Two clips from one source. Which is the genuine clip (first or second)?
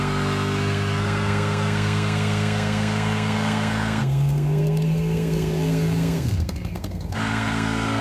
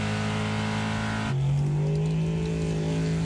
second